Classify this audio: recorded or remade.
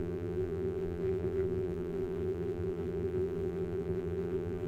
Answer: remade